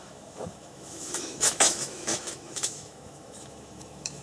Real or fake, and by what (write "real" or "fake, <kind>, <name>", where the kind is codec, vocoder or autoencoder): fake, autoencoder, DAC-VAE